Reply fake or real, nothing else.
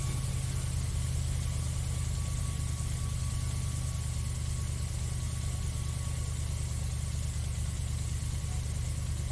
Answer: real